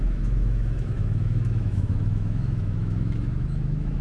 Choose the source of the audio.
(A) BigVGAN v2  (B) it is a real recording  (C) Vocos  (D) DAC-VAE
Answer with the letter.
D